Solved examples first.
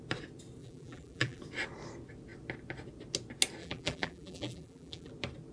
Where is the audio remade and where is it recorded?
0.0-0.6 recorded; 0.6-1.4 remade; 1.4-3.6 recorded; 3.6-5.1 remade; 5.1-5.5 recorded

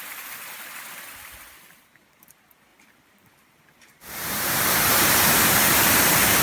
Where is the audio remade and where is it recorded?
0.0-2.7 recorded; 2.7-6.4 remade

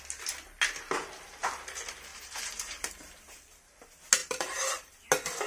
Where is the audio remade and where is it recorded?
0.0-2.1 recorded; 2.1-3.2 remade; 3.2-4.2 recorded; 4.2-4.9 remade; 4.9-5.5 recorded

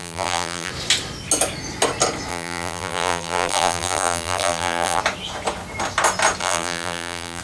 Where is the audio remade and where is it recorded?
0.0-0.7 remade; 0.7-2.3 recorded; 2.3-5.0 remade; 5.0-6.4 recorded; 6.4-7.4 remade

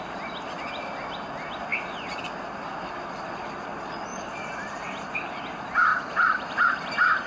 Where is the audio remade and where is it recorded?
0.0-1.7 recorded; 1.7-2.9 remade; 2.9-4.1 recorded; 4.1-5.4 remade; 5.4-5.9 recorded; 5.9-6.7 remade; 6.7-7.3 recorded

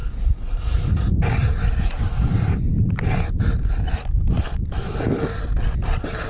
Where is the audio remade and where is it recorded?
0.0-0.9 remade; 0.9-1.4 recorded; 1.4-5.0 remade; 5.0-6.3 recorded

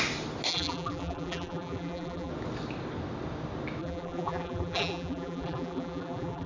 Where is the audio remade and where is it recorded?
0.0-0.5 recorded; 0.5-2.3 remade; 2.3-3.8 recorded; 3.8-6.5 remade